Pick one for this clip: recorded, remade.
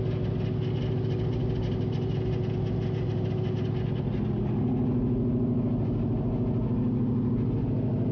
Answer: recorded